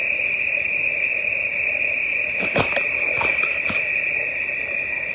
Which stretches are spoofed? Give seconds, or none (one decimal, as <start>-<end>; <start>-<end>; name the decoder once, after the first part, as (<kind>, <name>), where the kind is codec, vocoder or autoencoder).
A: none